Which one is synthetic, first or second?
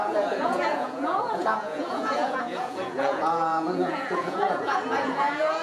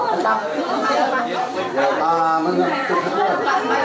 first